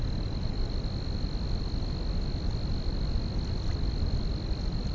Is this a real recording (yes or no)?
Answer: yes